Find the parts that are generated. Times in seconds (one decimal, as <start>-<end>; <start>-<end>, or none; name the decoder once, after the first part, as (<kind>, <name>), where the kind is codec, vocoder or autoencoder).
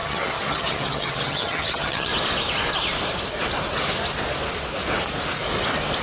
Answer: 0.0-2.1 (vocoder, HiFi-GAN)